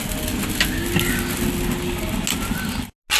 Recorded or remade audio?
recorded